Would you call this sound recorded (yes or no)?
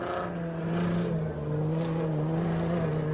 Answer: yes